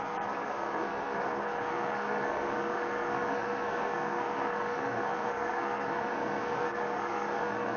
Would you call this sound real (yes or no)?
no